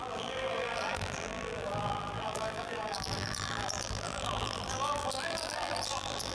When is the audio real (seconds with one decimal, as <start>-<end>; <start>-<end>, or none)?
none